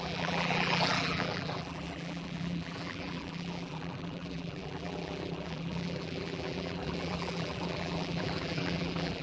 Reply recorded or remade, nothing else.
remade